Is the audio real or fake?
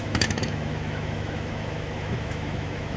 fake